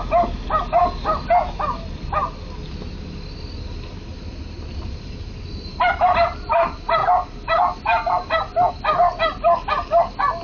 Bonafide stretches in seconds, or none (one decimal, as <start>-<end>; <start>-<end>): 0.0-4.7; 5.8-10.4